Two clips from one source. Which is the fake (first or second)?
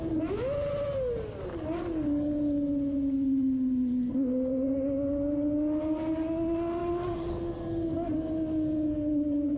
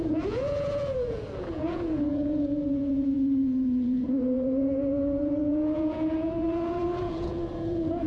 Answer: second